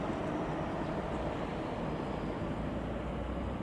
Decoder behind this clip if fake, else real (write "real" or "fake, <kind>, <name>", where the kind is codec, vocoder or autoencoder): real